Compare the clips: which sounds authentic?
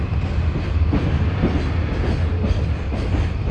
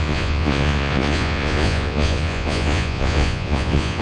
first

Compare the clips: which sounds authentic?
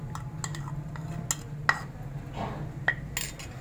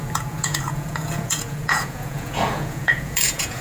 first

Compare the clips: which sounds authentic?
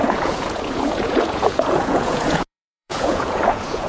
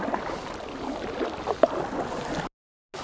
second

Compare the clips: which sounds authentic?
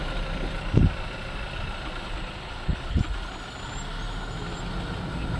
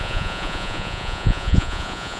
first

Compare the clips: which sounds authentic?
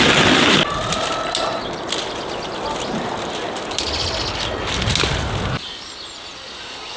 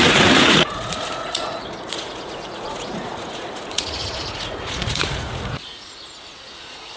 first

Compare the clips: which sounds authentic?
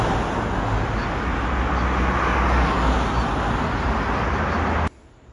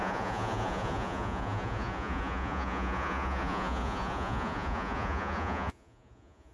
first